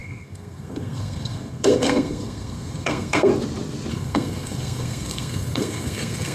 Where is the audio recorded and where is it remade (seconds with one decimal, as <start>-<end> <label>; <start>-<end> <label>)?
0.0-3.3 remade; 3.3-3.9 recorded; 3.9-6.3 remade